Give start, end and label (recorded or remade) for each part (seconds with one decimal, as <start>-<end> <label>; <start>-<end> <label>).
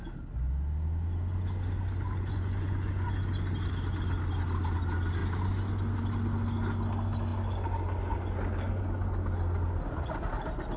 0.0-2.3 recorded; 2.3-3.2 remade; 3.2-10.8 recorded